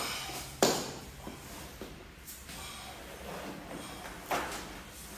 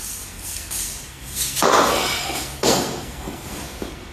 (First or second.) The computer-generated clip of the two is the second